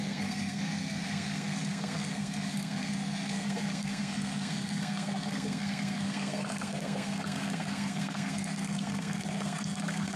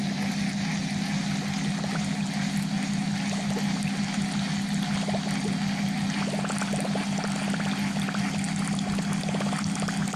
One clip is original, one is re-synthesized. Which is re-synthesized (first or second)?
first